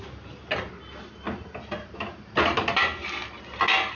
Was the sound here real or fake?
real